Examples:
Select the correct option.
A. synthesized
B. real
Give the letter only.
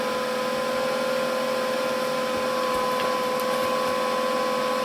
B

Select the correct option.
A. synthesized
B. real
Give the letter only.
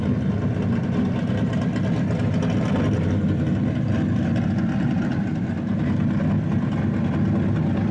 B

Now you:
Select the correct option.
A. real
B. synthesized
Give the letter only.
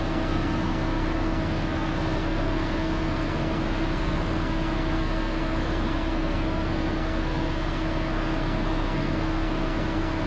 B